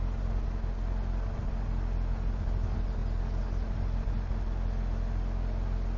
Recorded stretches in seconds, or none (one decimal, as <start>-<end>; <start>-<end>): 0.0-6.0